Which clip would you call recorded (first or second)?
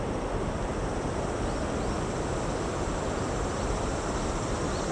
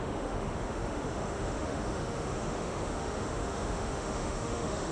first